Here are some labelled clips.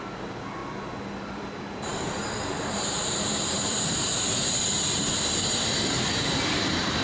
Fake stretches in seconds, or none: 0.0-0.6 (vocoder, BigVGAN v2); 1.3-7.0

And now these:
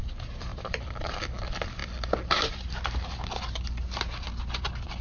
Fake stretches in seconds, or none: 0.0-1.8 (vocoder, BigVGAN v2)